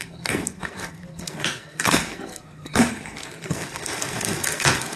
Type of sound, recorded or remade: remade